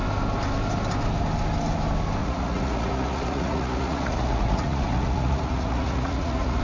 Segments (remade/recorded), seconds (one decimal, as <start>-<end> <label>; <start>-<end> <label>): 0.0-2.2 recorded; 2.2-6.6 remade